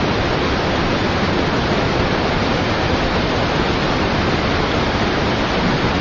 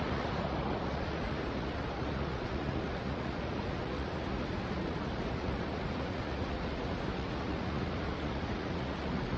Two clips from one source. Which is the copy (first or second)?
second